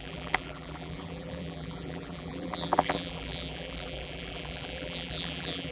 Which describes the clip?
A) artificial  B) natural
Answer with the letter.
A